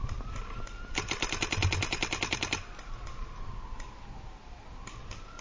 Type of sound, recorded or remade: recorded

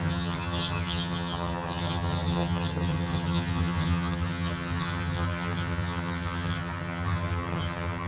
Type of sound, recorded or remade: remade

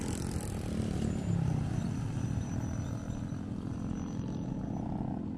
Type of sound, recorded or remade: recorded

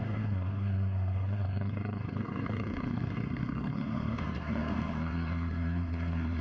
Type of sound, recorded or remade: remade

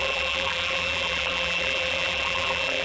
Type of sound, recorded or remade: remade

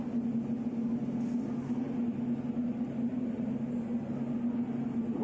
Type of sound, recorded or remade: recorded